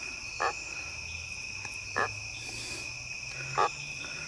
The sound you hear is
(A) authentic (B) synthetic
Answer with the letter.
A